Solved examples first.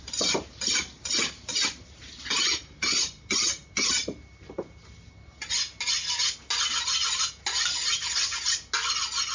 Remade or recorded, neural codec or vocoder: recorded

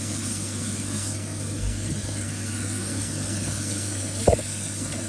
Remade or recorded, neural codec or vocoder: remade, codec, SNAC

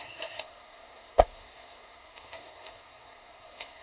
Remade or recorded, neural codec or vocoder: remade, codec, SNAC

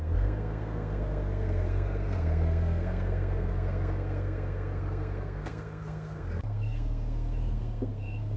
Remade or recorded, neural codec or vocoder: remade, codec, SNAC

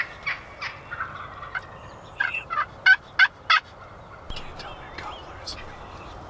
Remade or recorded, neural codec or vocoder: recorded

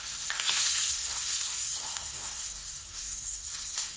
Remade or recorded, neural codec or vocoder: remade, codec, SNAC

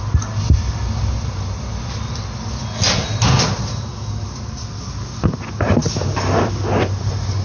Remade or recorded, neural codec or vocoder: recorded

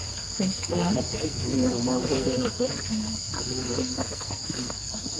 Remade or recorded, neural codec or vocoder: remade, codec, SNAC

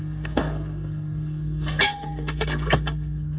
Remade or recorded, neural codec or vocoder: remade, codec, SNAC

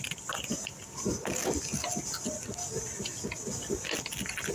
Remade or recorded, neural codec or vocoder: recorded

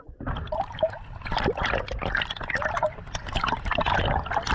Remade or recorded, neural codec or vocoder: recorded